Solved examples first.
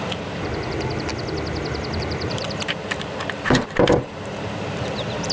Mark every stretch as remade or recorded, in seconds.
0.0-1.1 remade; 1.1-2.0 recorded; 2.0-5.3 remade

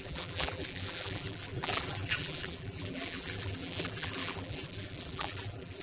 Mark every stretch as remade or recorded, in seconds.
0.0-5.8 remade

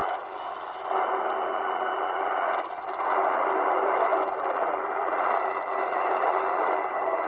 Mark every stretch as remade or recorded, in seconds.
0.0-4.1 remade; 4.1-5.4 recorded; 5.4-7.3 remade

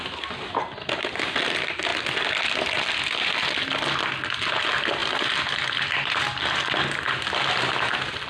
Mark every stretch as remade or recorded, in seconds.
0.0-8.3 recorded

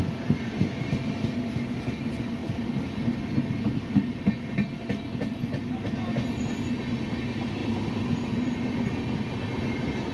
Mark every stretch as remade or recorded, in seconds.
0.0-10.1 recorded

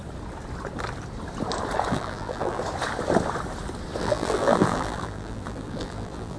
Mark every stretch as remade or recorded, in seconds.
0.0-1.9 recorded; 1.9-2.6 remade; 2.6-4.0 recorded; 4.0-6.4 remade

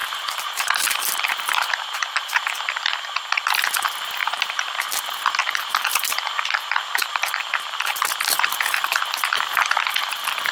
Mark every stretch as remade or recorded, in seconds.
0.0-2.4 remade; 2.4-4.2 recorded; 4.2-4.7 remade; 4.7-5.4 recorded; 5.4-6.3 remade; 6.3-10.5 recorded

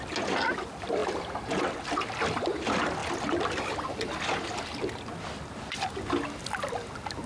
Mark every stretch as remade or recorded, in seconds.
0.0-1.0 recorded; 1.0-1.5 remade; 1.5-7.3 recorded